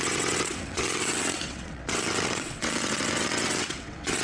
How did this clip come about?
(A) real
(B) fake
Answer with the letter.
B